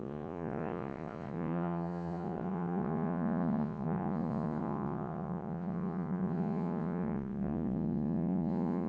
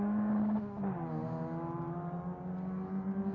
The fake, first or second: first